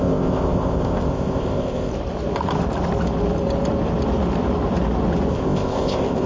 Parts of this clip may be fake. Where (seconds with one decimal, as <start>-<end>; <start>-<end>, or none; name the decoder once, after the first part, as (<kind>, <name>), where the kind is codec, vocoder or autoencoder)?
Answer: 0.0-1.9 (codec, ZipCodec); 5.3-6.3